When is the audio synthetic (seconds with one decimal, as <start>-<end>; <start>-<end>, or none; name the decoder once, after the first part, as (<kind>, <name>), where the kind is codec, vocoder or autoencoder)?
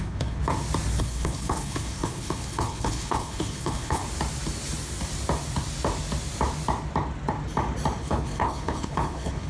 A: 0.0-0.4 (codec, HILCodec); 1.0-4.0; 8.0-9.5